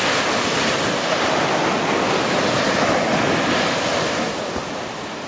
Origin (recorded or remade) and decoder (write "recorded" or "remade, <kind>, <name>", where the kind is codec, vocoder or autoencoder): recorded